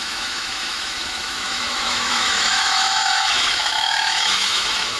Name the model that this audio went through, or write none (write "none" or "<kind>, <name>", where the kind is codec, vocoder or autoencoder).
autoencoder, DAC-VAE